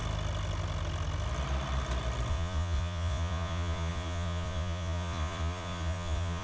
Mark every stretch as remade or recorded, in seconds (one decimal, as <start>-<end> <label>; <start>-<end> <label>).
0.0-2.3 recorded; 2.3-6.4 remade